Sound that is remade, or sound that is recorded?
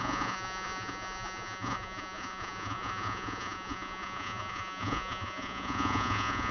remade